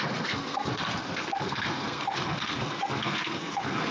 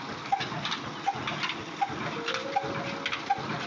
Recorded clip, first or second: second